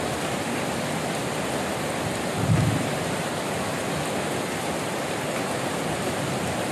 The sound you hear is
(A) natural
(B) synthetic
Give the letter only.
A